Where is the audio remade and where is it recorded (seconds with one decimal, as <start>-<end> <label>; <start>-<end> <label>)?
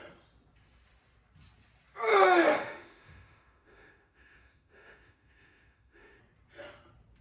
0.0-2.1 recorded; 2.1-6.2 remade; 6.2-7.2 recorded